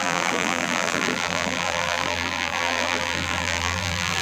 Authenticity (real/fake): fake